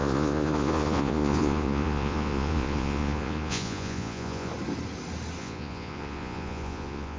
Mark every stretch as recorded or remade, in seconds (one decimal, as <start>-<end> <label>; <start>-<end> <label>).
0.0-4.5 remade; 4.5-5.4 recorded; 5.4-7.2 remade